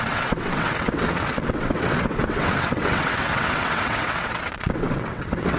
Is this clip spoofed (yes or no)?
yes